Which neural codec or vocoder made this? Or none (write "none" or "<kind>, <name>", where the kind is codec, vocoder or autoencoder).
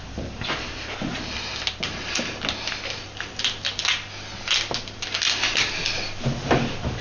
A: none